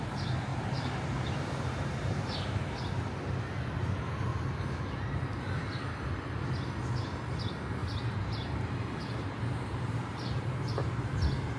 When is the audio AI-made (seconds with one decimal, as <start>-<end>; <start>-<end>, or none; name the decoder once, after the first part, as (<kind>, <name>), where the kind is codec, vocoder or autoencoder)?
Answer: 0.5-3.0 (vocoder, BigVGAN v2); 4.3-5.5; 7.8-10.7